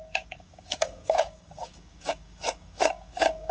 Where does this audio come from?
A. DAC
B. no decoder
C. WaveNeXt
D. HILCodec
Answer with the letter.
A